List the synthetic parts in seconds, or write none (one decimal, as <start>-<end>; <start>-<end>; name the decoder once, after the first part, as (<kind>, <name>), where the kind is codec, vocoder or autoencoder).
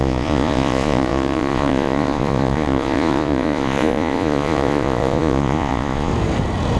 0.0-6.1 (vocoder, Vocos)